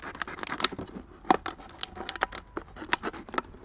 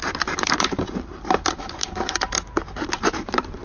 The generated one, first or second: second